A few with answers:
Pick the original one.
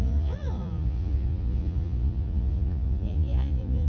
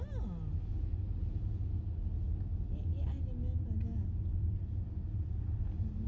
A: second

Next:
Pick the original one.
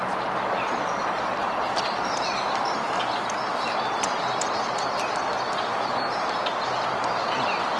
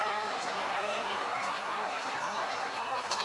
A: first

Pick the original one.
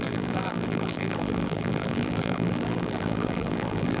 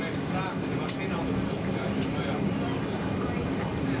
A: second